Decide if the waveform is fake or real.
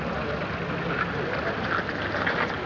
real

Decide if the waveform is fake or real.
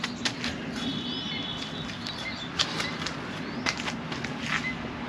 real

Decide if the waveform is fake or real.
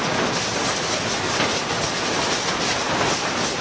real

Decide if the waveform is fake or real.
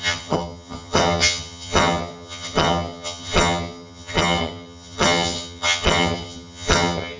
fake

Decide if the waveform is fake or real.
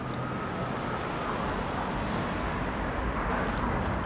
real